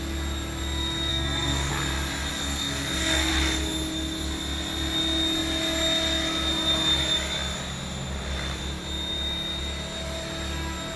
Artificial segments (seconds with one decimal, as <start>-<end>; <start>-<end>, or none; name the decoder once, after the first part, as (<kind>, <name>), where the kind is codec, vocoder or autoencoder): 1.1-1.7 (codec, SNAC); 2.3-3.3